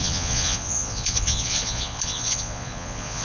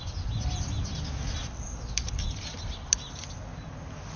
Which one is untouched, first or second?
second